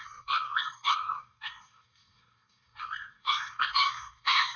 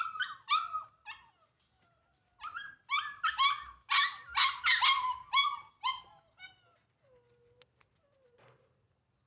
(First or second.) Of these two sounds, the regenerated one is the first